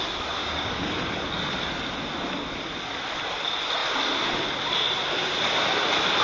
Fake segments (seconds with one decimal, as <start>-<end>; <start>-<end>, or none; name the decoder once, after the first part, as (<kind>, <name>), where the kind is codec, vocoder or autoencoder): 0.4-1.0 (codec, DAC)